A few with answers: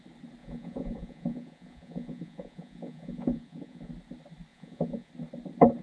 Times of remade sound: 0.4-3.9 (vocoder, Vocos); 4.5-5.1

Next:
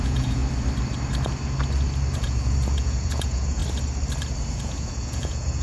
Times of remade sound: 0.0-0.4 (vocoder, Vocos); 2.1-3.6; 4.5-5.6

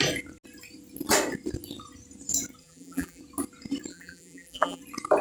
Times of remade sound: 2.6-3.2 (vocoder, BigVGAN v2); 3.9-4.8

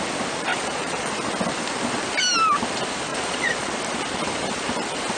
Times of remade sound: 0.5-1.1 (vocoder, Vocos); 3.1-3.7

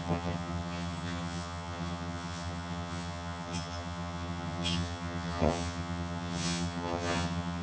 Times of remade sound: 0.0-7.6 (vocoder, HiFi-GAN)

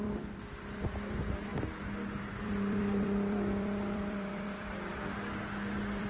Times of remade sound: 0.0-1.5 (vocoder, BigVGAN v2); 2.4-6.1

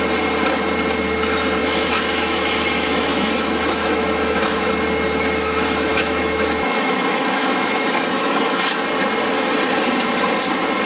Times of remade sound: 1.6-4.7 (autoencoder, DAC-VAE); 5.9-8.8

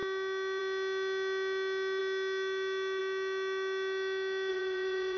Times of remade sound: 4.5-5.2 (vocoder, Vocos)